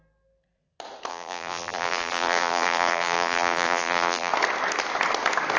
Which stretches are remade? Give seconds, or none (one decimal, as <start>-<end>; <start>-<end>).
1.1-4.3